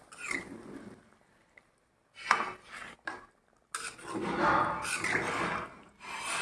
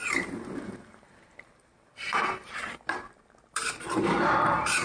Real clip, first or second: first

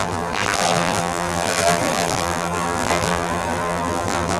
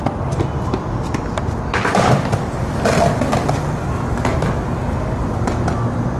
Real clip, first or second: second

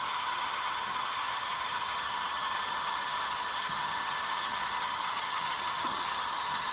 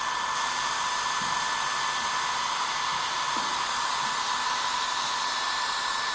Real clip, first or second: second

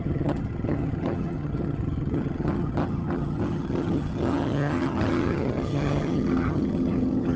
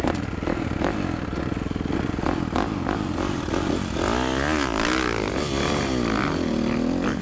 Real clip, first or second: second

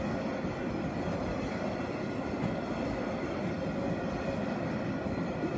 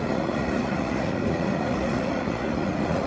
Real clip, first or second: first